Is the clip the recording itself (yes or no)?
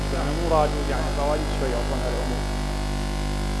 yes